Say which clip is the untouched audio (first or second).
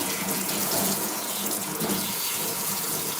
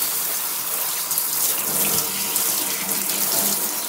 second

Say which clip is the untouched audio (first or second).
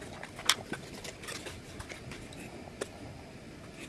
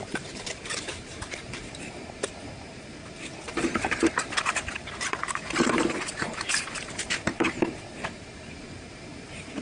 first